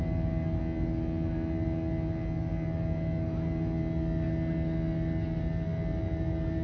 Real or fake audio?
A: real